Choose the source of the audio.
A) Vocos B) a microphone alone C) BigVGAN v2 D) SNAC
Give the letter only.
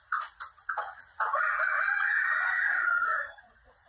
A